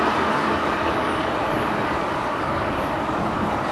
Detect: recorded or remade remade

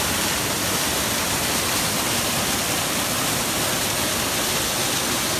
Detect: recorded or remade recorded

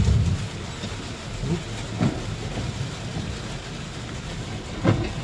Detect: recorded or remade recorded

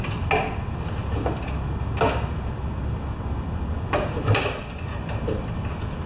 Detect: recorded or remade recorded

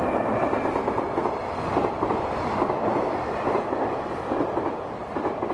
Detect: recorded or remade remade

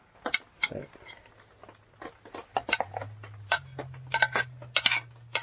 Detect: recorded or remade recorded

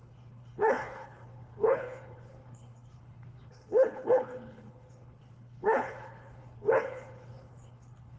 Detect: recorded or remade remade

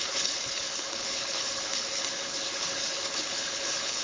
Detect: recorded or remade remade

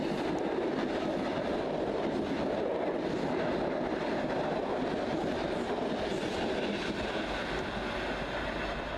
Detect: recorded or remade recorded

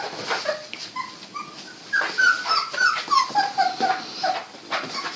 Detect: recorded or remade recorded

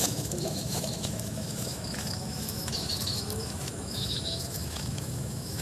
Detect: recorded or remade remade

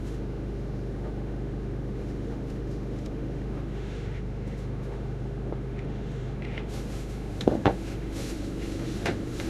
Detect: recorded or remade remade